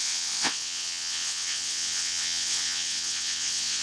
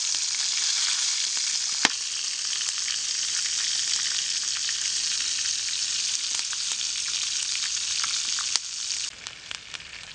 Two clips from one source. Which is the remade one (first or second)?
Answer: first